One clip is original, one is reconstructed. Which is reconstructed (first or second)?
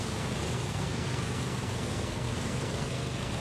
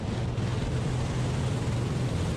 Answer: first